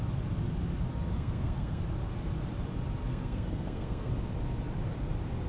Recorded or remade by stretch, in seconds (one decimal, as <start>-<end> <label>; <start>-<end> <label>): 0.0-1.1 recorded; 1.1-1.8 remade; 1.8-3.1 recorded; 3.1-4.1 remade; 4.1-5.5 recorded